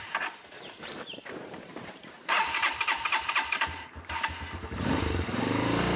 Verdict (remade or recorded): remade